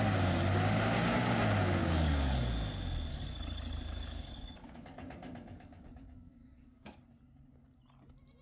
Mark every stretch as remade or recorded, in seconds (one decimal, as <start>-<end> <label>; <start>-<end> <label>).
0.0-1.8 recorded; 1.8-2.5 remade; 2.5-3.1 recorded; 3.1-7.0 remade; 7.0-8.4 recorded